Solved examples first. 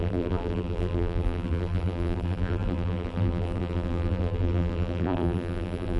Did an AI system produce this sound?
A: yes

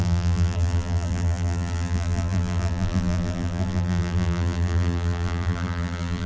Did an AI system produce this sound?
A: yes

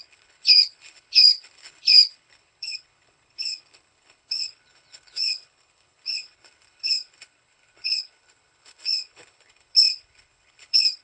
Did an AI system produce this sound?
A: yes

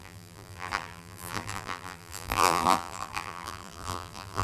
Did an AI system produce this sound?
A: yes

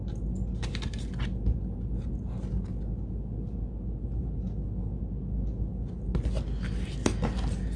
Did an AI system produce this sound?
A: no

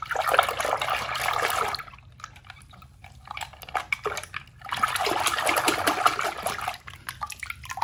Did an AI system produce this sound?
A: no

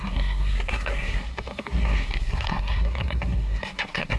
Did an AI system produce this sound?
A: yes